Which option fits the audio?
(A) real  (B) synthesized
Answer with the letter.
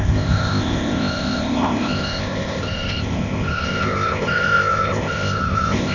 B